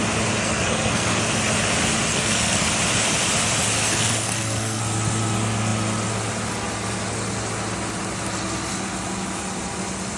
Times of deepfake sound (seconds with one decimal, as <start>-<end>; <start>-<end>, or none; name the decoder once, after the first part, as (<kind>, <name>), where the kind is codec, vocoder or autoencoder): 0.4-1.2 (codec, SNAC); 2.1-2.7; 3.8-4.8